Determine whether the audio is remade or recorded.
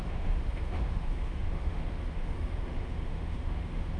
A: remade